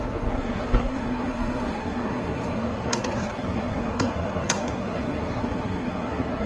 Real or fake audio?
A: fake